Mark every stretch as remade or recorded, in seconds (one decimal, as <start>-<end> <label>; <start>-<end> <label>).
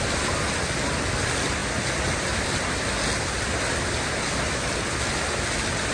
0.0-5.9 recorded